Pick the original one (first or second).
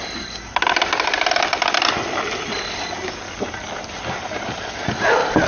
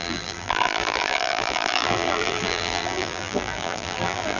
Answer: first